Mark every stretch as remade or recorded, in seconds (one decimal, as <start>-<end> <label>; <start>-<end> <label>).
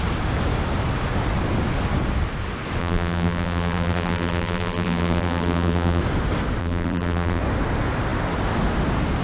0.0-2.8 recorded; 2.8-6.0 remade; 6.0-6.6 recorded; 6.6-7.4 remade; 7.4-9.2 recorded